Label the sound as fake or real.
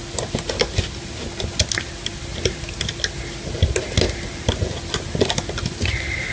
real